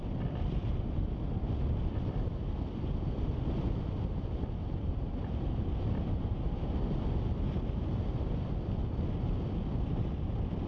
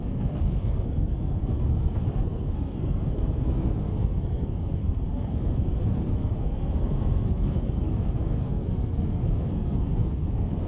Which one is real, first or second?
first